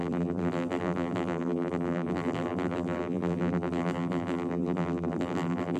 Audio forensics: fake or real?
fake